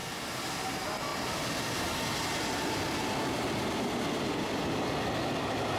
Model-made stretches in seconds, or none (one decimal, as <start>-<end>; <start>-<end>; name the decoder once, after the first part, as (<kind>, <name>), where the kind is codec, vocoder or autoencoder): none